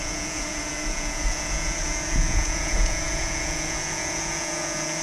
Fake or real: fake